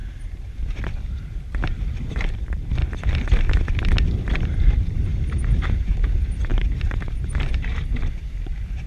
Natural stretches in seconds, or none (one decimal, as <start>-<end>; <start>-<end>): 2.8-4.1